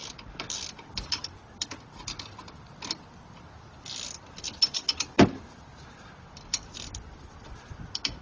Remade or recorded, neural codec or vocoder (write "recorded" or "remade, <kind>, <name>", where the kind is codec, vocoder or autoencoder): recorded